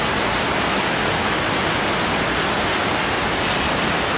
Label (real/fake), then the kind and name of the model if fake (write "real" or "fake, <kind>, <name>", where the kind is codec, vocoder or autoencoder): real